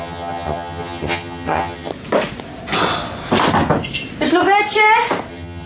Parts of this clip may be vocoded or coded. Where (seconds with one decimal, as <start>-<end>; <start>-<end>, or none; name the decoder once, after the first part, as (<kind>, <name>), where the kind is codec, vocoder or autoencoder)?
0.0-1.9 (vocoder, HiFi-GAN); 5.3-5.7